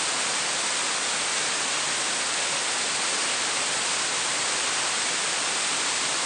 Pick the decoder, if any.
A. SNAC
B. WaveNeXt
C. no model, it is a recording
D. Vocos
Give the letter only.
C